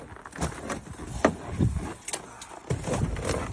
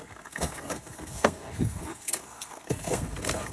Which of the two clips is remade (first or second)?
second